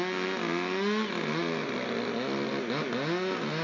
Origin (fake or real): real